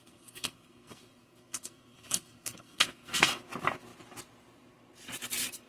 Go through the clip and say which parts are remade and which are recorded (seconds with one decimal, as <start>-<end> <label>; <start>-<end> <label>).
0.0-3.4 remade; 3.4-5.7 recorded